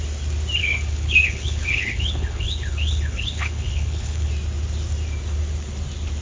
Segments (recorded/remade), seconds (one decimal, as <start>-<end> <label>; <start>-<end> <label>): 0.0-0.6 recorded; 0.6-4.3 remade; 4.3-6.2 recorded